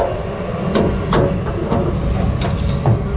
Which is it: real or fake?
real